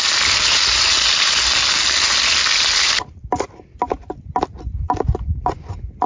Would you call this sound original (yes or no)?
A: yes